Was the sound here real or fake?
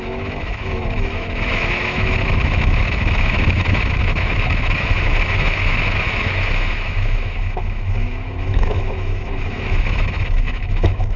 fake